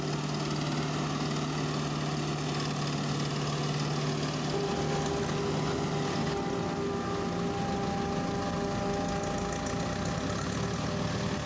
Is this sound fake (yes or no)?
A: no